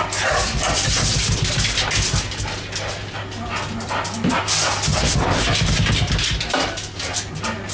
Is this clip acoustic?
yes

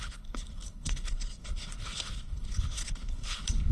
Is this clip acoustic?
no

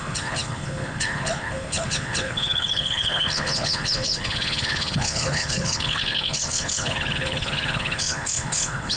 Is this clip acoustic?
no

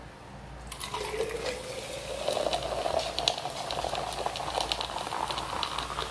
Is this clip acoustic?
yes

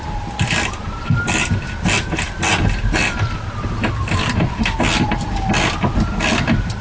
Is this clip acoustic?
yes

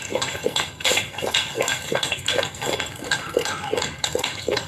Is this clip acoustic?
no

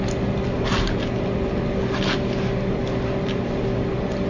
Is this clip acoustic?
yes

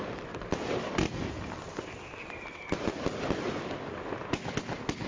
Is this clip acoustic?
yes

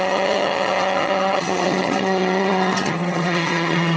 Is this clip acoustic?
no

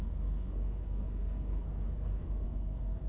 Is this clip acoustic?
no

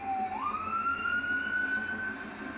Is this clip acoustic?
yes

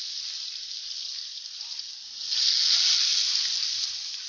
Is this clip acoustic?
yes